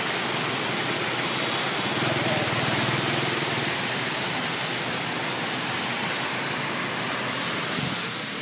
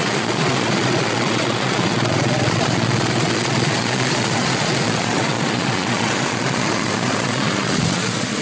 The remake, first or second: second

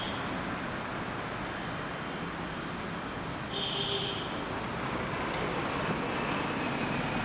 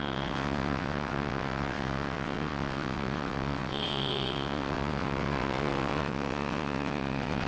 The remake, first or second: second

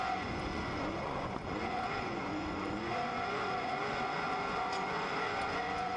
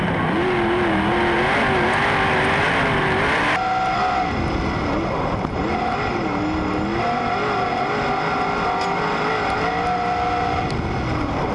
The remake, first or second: first